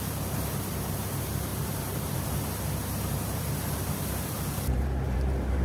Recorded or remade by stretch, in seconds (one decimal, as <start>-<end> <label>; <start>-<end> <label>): 0.0-5.6 remade